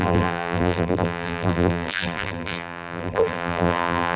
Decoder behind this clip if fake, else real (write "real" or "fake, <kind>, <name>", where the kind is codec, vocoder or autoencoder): fake, vocoder, BigVGAN v2